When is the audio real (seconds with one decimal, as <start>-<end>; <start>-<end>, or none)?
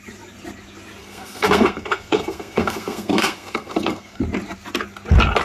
0.0-1.0; 4.2-5.4